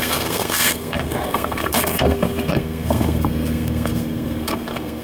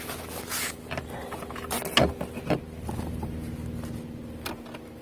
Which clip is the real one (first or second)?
second